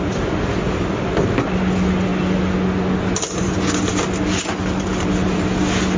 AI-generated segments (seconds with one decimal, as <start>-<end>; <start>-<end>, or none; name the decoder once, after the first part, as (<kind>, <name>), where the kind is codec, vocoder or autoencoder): none